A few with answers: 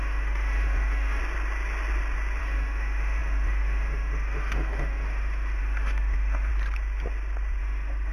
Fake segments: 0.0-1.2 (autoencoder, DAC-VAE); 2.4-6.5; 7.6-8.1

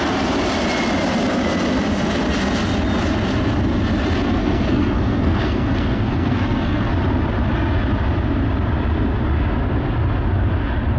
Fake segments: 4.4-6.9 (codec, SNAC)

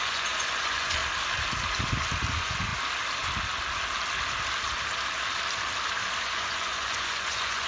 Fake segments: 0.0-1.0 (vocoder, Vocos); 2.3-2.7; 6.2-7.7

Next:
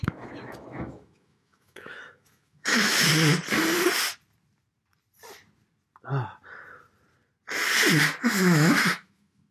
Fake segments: 0.0-3.1 (autoencoder, DAC-VAE); 8.2-9.5